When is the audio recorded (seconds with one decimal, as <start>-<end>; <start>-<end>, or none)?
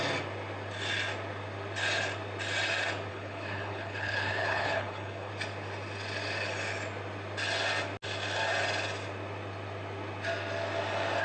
0.0-3.1; 5.3-11.2